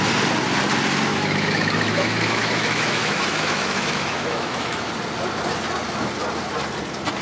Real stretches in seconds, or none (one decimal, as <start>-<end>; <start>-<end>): 0.0-1.1; 4.9-7.2